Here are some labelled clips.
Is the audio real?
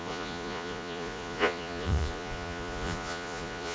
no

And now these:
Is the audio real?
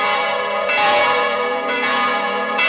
no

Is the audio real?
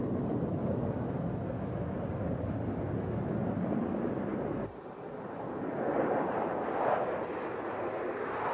yes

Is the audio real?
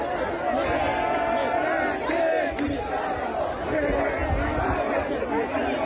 yes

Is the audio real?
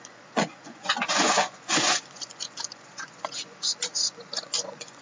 no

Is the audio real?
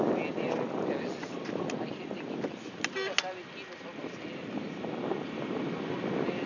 yes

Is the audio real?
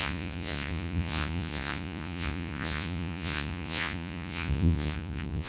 no